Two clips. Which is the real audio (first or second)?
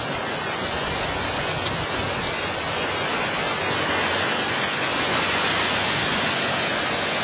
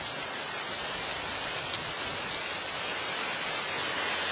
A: second